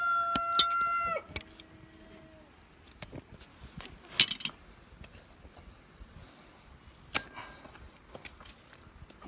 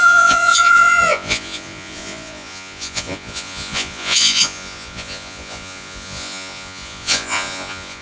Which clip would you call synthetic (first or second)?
second